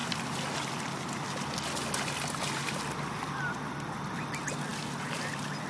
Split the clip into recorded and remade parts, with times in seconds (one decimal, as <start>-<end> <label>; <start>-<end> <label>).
0.0-5.7 recorded